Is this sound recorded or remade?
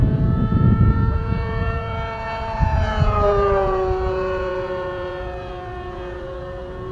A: remade